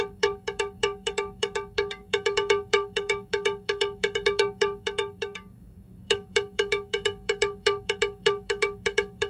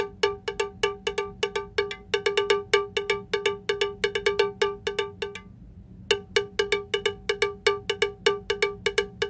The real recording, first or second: second